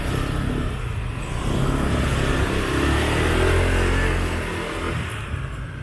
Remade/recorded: recorded